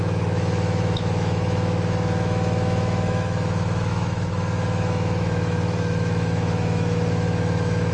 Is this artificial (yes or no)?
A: yes